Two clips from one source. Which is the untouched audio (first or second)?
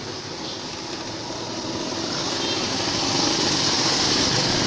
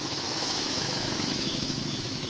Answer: first